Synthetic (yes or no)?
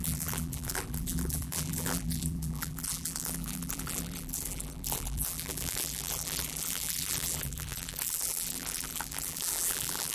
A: yes